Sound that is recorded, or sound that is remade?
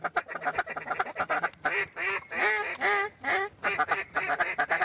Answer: recorded